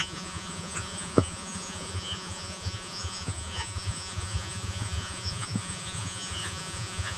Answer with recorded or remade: remade